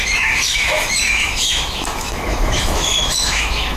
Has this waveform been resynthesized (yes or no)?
yes